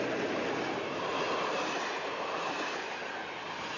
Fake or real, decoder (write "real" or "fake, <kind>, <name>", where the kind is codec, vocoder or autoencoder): real